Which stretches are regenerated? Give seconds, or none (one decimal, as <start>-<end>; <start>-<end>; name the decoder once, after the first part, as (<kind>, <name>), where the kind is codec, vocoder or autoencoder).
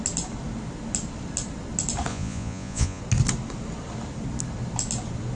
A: 2.1-3.0 (vocoder, Vocos)